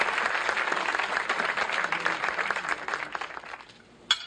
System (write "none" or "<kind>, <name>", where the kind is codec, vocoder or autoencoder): none